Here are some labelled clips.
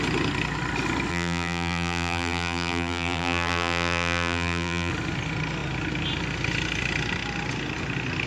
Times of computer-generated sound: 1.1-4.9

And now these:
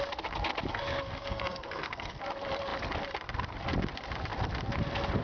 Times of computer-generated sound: 0.7-2.2

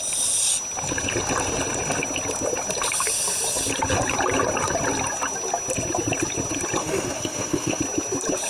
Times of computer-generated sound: 6.8-7.8

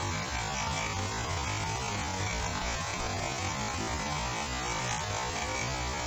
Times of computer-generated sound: 2.5-3.5

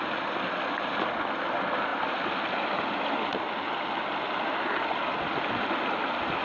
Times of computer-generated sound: none

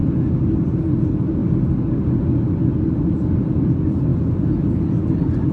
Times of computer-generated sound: none

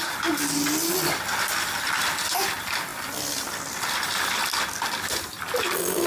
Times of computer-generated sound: none

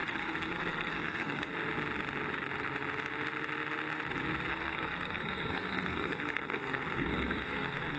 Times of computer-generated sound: 0.0-1.5; 4.5-8.0